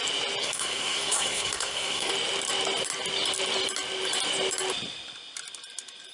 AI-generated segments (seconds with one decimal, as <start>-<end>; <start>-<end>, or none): 0.4-2.1